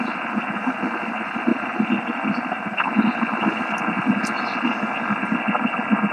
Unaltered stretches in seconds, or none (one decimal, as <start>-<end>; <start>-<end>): 0.0-6.1

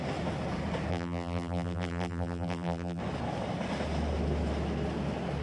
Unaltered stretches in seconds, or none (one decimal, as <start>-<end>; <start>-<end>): 0.0-0.9; 3.0-5.4